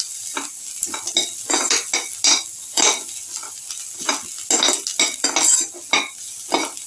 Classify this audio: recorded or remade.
recorded